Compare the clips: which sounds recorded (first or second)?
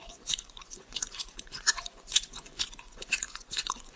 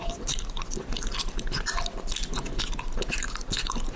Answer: second